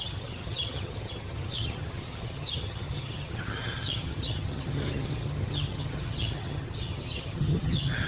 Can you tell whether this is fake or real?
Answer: fake